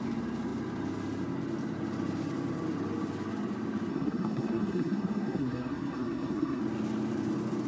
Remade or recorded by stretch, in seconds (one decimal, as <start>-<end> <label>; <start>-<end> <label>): 0.0-3.9 recorded; 3.9-6.6 remade; 6.6-7.7 recorded